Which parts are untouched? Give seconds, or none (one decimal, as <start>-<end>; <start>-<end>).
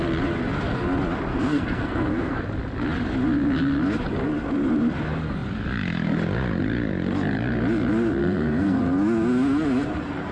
0.0-1.3; 2.4-8.2; 8.8-10.3